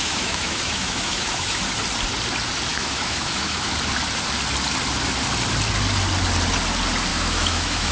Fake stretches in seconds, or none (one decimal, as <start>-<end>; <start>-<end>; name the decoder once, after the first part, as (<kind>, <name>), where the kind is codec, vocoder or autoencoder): 0.0-1.6 (autoencoder, DAC-VAE); 2.7-3.7; 7.1-7.9